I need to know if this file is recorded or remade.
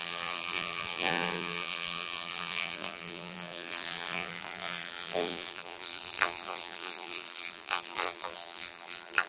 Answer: remade